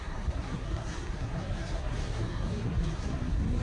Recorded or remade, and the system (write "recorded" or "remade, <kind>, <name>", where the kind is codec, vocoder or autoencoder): remade, codec, SNAC